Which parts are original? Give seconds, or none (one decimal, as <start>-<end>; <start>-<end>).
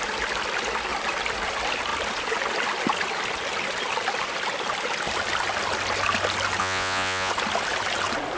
0.0-6.6; 7.3-8.4